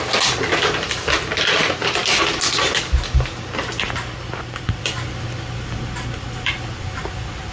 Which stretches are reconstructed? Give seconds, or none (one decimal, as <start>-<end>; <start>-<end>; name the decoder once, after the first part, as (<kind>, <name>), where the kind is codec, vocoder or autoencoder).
none

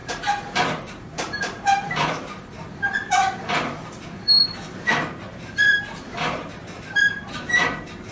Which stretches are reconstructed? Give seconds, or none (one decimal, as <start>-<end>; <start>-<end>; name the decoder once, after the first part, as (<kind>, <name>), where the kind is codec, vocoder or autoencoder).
0.0-8.1 (vocoder, BigVGAN v2)

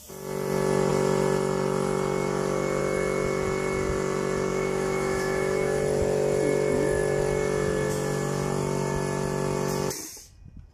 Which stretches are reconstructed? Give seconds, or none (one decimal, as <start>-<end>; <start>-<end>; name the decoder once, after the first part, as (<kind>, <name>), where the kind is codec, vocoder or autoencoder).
4.5-5.8 (autoencoder, DAC-VAE)

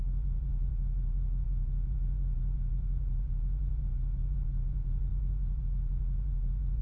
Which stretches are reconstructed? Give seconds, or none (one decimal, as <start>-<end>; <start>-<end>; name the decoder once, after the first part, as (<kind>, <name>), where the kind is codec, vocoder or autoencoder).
0.0-6.8 (vocoder, Vocos)

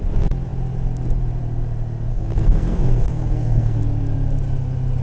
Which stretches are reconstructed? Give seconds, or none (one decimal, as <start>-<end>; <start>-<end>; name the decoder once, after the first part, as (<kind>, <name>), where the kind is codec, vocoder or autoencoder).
2.1-3.8 (codec, SNAC)

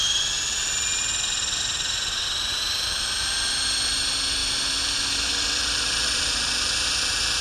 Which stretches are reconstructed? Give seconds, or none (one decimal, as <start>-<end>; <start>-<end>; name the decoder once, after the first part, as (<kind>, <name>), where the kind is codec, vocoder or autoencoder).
0.0-2.2 (vocoder, BigVGAN v2); 4.4-6.9

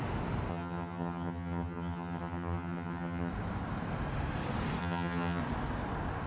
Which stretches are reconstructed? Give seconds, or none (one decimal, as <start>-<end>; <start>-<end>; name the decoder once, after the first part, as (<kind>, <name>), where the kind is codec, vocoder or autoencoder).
0.5-3.3 (vocoder, HiFi-GAN); 4.8-5.4

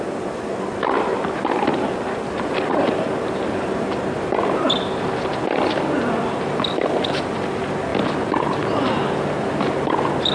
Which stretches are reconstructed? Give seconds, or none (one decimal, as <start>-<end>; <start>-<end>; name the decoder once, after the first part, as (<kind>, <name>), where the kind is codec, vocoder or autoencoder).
none